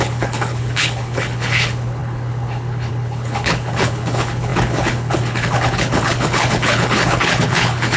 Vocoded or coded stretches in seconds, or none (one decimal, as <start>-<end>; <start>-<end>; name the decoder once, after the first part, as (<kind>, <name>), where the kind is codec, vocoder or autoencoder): 0.0-8.0 (codec, HILCodec)